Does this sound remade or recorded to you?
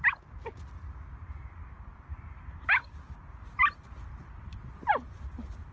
recorded